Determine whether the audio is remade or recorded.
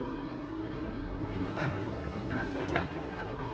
remade